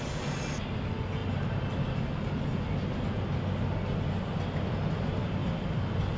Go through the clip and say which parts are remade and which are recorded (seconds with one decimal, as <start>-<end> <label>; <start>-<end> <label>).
0.0-6.2 recorded